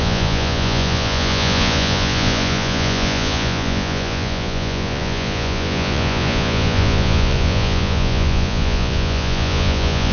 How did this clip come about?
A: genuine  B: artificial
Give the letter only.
B